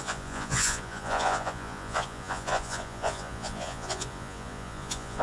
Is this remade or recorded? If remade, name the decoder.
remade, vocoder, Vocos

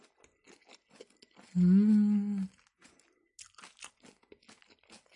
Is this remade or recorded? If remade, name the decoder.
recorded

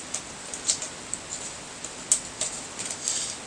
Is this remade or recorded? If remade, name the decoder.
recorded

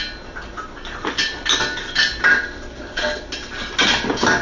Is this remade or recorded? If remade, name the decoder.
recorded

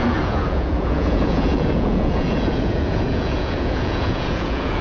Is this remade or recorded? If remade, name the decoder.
remade, vocoder, Vocos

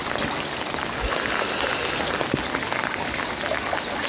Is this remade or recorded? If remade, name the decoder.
recorded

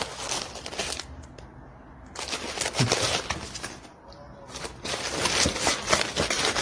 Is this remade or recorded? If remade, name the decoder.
recorded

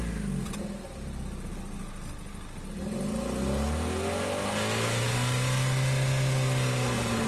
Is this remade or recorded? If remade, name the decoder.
recorded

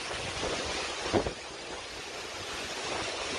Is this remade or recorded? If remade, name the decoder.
remade, vocoder, Vocos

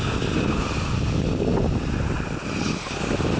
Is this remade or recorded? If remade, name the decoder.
recorded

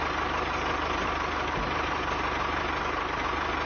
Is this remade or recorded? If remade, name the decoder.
recorded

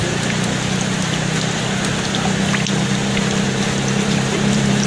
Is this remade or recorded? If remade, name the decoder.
recorded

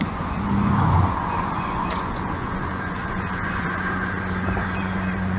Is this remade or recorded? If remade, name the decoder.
remade, vocoder, Vocos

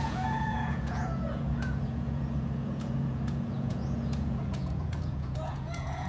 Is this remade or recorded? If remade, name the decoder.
remade, vocoder, Vocos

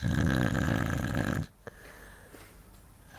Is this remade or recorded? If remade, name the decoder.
recorded